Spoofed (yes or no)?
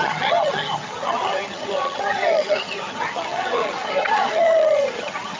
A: yes